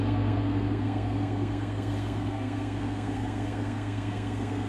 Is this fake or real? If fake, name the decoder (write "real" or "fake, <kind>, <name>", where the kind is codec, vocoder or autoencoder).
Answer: fake, codec, SNAC